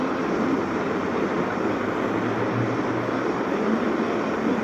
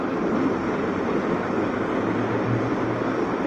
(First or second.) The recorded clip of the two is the second